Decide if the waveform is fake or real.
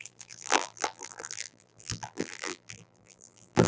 fake